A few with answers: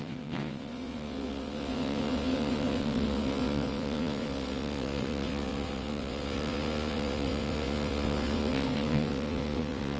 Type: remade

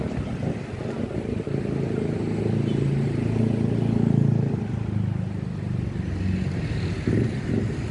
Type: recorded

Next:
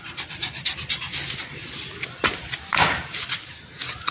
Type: recorded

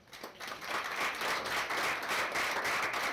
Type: recorded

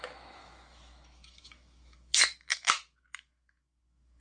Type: remade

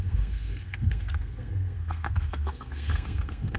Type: remade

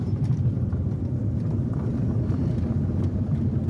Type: remade